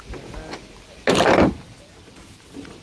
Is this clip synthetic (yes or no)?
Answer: no